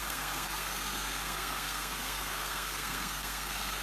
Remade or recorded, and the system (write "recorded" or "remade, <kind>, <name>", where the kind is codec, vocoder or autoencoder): remade, codec, SNAC